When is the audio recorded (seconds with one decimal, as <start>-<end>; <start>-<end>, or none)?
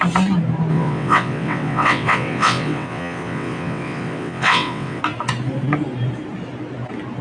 0.0-0.7; 5.0-7.2